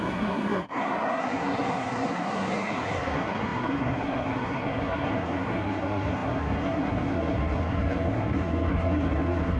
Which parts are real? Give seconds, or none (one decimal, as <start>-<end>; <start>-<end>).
none